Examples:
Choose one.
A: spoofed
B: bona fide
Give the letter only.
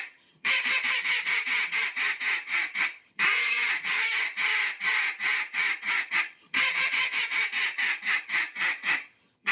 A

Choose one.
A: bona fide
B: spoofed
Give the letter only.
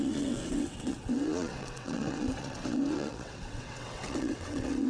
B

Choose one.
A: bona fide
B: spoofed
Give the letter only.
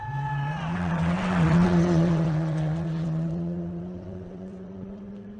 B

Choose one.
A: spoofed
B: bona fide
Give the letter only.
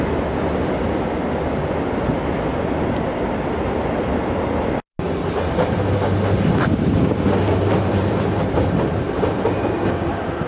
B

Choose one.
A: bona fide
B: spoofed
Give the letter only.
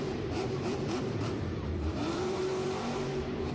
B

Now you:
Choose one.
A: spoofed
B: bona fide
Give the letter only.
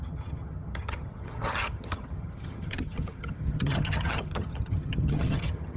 A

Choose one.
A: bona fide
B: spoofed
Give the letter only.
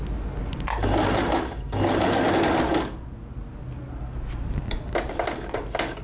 A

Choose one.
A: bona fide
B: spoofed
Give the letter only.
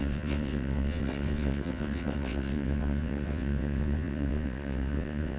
B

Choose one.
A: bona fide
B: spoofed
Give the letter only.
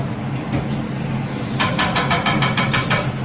A